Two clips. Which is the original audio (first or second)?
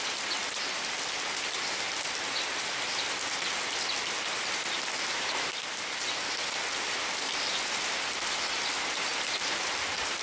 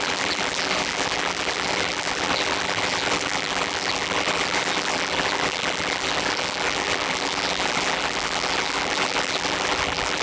first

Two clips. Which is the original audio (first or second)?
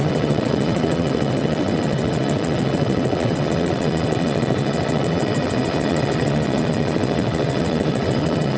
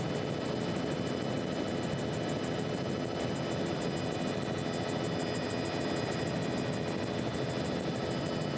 second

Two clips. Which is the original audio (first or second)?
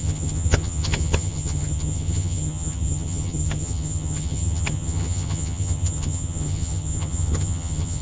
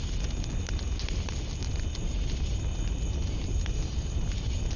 second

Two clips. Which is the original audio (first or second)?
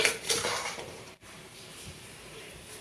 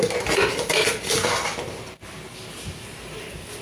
second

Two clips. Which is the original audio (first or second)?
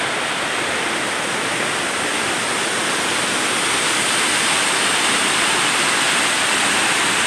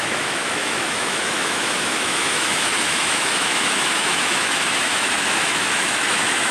first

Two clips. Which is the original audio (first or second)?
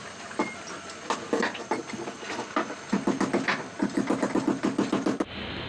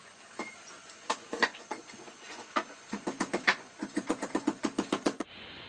first